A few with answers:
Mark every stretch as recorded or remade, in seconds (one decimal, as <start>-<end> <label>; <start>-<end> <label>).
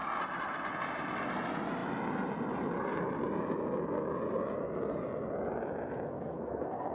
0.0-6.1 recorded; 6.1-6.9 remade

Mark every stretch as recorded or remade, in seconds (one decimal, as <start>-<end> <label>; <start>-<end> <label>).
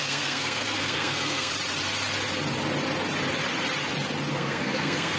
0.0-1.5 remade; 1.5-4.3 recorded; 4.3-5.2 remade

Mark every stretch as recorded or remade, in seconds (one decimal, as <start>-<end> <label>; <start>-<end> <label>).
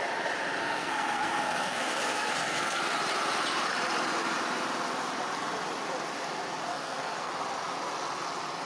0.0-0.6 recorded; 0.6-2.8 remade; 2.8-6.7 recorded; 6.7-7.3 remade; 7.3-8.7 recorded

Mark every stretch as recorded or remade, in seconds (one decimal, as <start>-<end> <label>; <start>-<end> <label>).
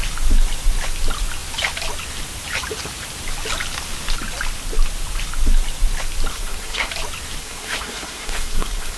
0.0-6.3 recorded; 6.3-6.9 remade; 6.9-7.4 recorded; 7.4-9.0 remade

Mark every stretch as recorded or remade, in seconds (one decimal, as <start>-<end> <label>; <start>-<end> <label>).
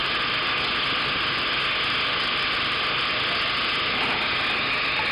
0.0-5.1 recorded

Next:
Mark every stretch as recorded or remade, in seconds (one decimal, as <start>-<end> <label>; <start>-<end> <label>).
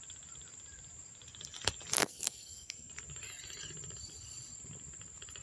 0.0-2.0 recorded; 2.0-2.9 remade; 2.9-5.4 recorded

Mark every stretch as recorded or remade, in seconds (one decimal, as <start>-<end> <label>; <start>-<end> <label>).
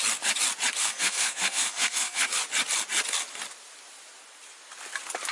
0.0-0.8 recorded; 0.8-2.3 remade; 2.3-5.3 recorded